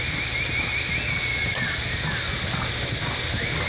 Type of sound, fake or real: real